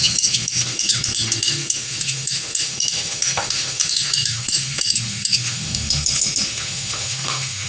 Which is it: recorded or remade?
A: remade